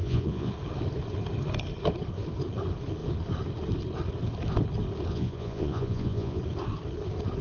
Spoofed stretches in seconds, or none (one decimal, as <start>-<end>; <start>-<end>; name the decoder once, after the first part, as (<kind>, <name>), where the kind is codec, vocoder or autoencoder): 0.0-0.5 (vocoder, Vocos); 5.1-6.4